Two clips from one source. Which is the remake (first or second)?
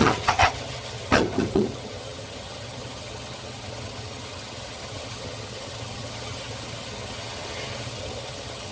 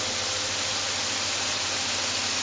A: first